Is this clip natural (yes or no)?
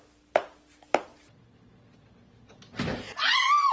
yes